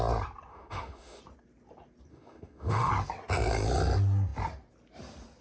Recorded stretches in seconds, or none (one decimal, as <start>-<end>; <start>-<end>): 0.0-0.5; 1.2-2.1; 2.9-5.4